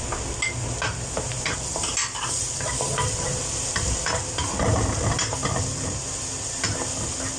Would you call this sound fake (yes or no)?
no